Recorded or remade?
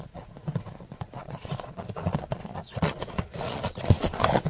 remade